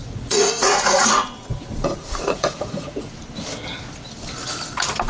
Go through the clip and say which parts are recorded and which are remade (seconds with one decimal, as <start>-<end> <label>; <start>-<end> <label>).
0.0-3.1 remade; 3.1-5.1 recorded